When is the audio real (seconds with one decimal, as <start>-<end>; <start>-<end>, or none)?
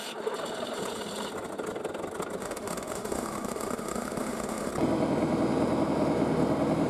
0.0-2.4; 4.7-6.9